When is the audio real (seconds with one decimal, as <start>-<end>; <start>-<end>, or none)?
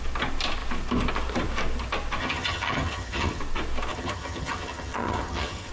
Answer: 0.0-2.2; 3.4-3.9